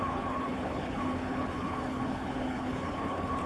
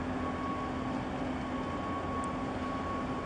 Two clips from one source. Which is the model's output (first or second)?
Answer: first